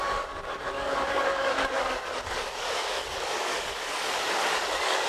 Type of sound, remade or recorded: remade